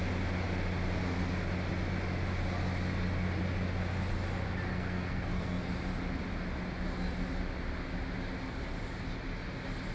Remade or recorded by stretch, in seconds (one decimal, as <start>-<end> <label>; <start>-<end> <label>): 0.0-4.7 recorded; 4.7-5.7 remade; 5.7-9.9 recorded